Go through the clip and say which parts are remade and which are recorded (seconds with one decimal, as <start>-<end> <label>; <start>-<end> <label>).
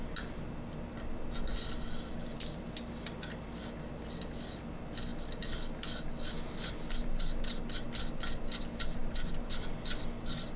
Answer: 0.0-10.6 recorded